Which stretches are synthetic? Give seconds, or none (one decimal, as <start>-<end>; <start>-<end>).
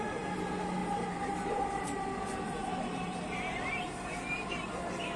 0.8-2.0; 2.6-3.8